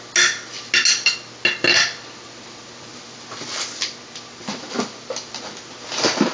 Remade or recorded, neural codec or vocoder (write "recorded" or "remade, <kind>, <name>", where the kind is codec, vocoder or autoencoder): recorded